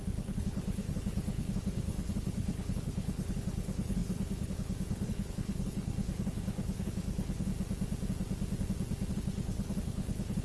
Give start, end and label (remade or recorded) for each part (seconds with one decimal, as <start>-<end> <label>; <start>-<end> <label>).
0.0-7.5 remade; 7.5-9.1 recorded; 9.1-10.4 remade